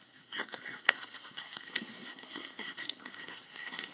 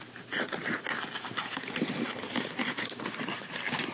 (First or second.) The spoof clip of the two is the first